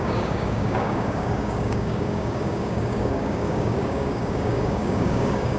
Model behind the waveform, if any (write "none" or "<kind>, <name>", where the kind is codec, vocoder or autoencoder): codec, DAC